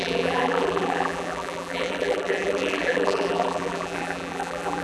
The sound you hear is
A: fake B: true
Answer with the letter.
A